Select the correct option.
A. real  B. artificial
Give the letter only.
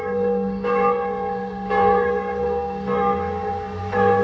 B